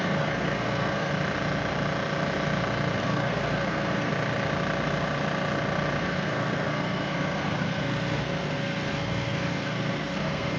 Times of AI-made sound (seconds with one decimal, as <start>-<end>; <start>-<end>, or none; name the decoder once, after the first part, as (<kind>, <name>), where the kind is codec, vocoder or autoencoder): 0.0-1.1 (codec, SNAC); 3.0-4.1; 6.0-10.6